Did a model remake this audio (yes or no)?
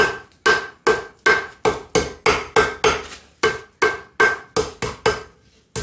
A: no